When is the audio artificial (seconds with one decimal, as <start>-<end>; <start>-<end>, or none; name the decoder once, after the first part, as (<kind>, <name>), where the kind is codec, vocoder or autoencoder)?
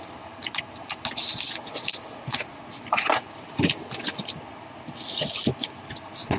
none